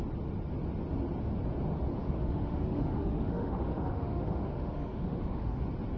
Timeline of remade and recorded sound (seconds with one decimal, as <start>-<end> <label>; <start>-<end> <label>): 0.0-2.0 recorded; 2.0-5.6 remade; 5.6-6.0 recorded